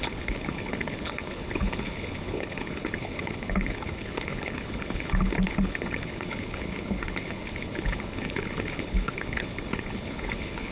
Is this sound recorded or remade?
remade